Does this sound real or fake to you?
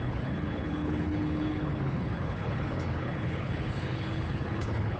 fake